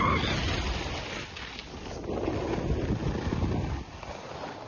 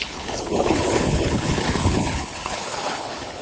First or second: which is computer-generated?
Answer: second